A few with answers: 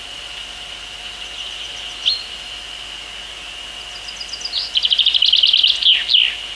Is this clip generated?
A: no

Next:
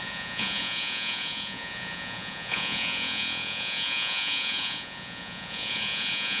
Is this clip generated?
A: yes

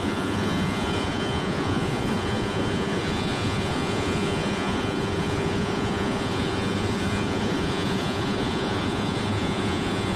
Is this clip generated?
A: yes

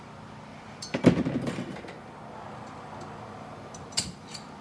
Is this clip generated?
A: no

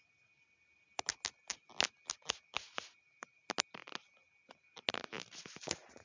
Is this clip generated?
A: no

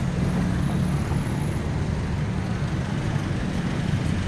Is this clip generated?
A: no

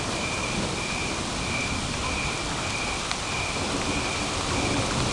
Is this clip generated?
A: no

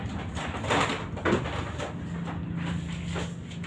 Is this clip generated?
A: no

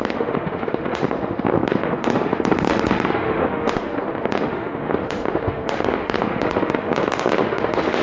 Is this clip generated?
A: yes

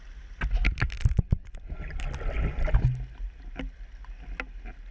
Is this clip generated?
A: no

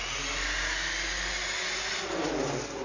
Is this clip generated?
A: no